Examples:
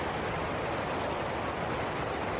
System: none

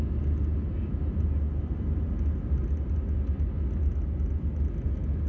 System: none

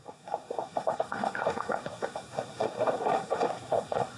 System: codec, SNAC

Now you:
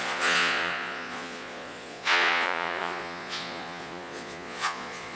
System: vocoder, Vocos